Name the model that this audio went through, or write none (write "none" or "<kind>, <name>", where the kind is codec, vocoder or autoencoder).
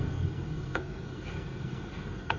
codec, SNAC